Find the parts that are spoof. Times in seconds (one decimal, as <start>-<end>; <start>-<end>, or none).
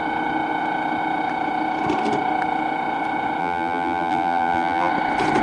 3.4-4.9